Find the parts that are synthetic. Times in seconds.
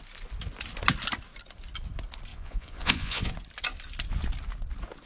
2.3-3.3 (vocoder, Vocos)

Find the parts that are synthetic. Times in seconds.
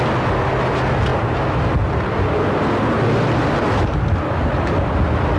none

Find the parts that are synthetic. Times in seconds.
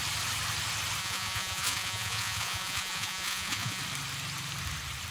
1.0-3.8 (vocoder, Vocos)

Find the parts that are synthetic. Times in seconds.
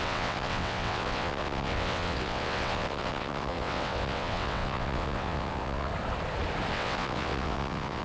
0.0-5.9 (vocoder, WaveNeXt); 6.7-8.0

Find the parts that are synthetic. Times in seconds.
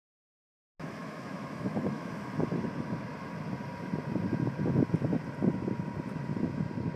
1.0-2.1 (autoencoder, DAC-VAE)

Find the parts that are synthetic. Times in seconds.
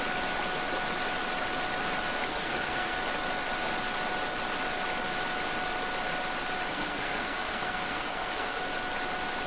2.3-3.0 (codec, SNAC); 6.7-8.6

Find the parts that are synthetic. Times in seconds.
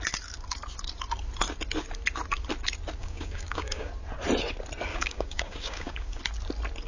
3.0-3.9 (codec, DAC); 4.9-6.2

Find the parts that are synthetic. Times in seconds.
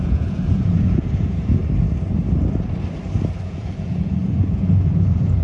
0.0-1.6 (vocoder, Vocos); 3.4-5.4